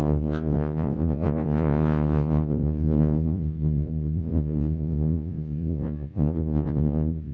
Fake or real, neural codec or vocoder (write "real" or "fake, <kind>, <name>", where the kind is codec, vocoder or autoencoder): fake, vocoder, Vocos